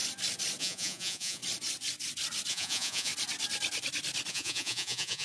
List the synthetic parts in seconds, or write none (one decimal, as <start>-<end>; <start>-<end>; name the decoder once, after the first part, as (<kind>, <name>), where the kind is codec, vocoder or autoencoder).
0.6-1.4 (vocoder, Vocos); 2.5-3.1; 4.3-5.2